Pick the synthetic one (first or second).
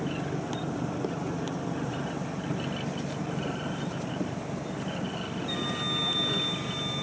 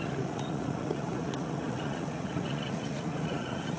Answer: second